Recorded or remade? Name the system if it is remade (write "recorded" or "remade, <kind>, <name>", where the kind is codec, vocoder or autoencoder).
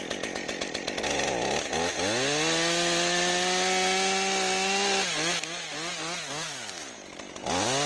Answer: recorded